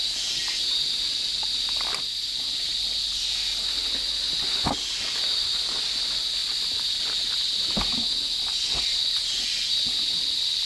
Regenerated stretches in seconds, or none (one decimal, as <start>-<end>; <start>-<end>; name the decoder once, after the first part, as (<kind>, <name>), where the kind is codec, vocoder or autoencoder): none